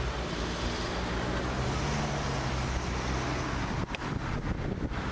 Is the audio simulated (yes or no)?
no